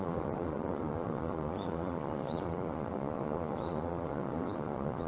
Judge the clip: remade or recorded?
remade